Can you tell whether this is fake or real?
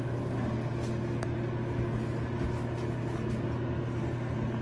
real